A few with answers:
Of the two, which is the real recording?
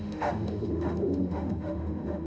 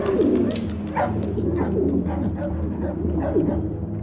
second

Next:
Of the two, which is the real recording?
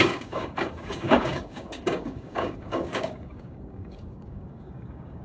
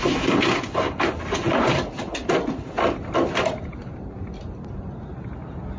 second